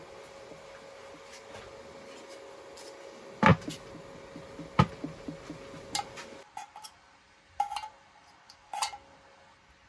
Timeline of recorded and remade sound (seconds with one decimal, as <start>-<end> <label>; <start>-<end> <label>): 0.0-9.9 recorded